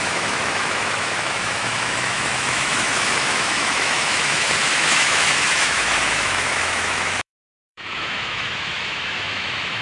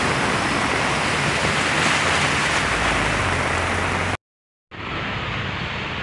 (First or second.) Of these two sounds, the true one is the second